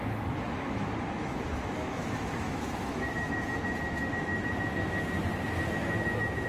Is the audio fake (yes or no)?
yes